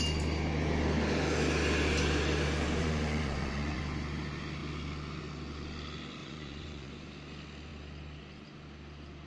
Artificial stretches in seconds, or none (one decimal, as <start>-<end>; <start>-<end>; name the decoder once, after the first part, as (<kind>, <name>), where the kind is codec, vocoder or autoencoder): 2.8-3.8 (vocoder, Vocos); 6.2-6.9